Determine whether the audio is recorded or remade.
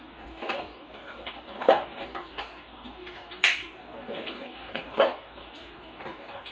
remade